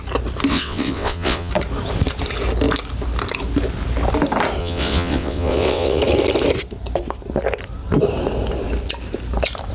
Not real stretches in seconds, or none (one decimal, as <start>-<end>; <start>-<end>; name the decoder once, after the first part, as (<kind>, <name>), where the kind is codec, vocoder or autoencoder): 0.5-1.5 (vocoder, WaveNeXt); 4.6-6.0